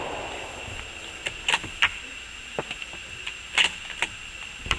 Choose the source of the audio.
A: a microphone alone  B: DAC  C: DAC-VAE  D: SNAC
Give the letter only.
A